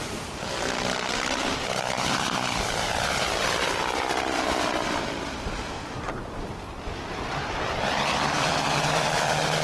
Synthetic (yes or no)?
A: yes